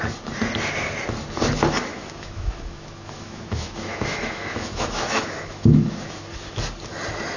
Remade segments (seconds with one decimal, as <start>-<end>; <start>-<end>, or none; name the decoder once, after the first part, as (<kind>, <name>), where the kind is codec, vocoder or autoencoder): 1.9-6.3 (autoencoder, DAC-VAE)